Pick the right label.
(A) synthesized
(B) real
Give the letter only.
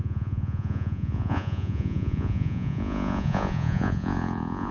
A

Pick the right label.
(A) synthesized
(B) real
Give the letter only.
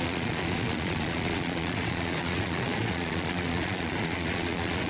A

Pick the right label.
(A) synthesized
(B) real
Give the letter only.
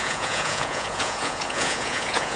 A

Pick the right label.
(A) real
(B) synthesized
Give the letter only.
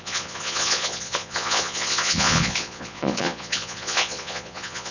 B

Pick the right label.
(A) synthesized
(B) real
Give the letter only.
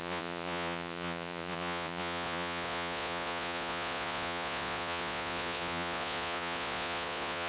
A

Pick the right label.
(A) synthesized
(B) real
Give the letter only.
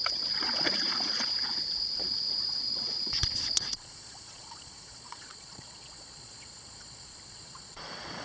A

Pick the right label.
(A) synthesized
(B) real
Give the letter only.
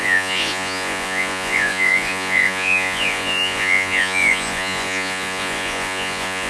A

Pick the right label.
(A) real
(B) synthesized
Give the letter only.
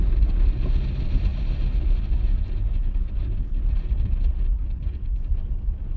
A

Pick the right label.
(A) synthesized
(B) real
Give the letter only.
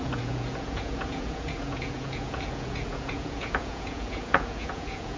A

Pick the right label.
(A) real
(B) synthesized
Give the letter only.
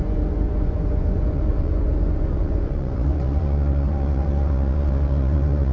B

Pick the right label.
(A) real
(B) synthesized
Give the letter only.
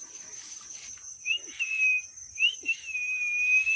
A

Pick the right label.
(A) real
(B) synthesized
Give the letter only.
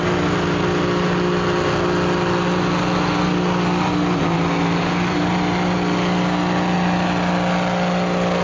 A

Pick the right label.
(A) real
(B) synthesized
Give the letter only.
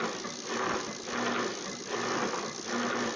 A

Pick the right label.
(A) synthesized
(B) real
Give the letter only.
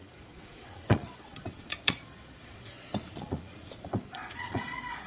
A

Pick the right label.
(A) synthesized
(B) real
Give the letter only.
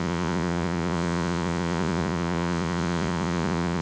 A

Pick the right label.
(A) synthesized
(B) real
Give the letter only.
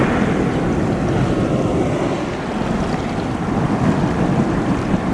B